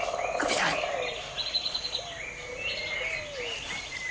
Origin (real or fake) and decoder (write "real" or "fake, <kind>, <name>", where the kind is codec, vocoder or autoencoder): real